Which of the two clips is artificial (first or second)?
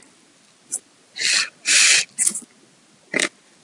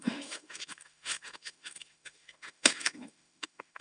second